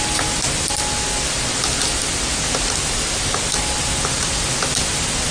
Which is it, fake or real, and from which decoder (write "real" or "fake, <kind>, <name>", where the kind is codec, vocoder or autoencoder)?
real